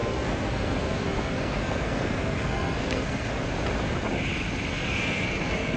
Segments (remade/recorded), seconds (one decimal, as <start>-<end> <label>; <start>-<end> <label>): 0.0-3.4 remade; 3.4-4.7 recorded; 4.7-5.8 remade